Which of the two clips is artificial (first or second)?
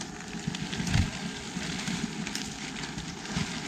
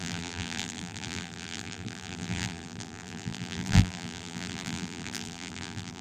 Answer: second